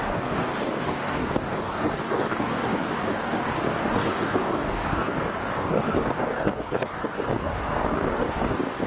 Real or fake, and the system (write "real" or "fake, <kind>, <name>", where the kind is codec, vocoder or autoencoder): fake, codec, DAC